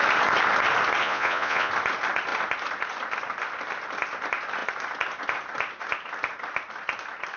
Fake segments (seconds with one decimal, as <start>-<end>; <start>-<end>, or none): 1.0-1.7